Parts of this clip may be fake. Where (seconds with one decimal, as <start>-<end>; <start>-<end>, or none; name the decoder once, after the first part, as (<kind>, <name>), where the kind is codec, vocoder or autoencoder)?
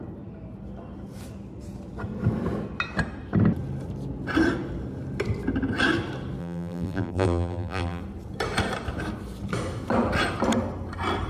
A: 6.4-8.0 (vocoder, BigVGAN v2)